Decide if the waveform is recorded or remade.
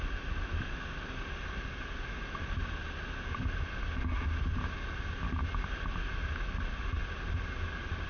recorded